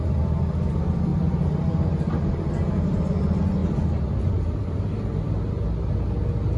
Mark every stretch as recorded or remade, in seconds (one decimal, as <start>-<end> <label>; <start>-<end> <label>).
0.0-1.1 recorded; 1.1-2.5 remade; 2.5-6.6 recorded